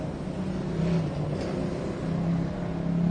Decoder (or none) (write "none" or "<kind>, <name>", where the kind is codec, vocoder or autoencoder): none